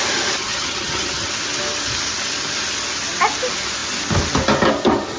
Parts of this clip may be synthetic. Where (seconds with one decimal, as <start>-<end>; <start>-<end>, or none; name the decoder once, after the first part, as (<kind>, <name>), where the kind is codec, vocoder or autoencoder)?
0.4-1.3 (vocoder, HiFi-GAN)